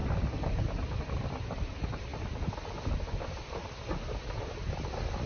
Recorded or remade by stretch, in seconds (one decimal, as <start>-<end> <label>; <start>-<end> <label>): 0.0-5.3 recorded